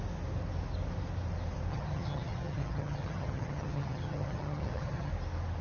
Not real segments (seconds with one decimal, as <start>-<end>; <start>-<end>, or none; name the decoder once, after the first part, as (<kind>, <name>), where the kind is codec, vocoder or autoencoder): 1.7-5.1 (vocoder, HiFi-GAN)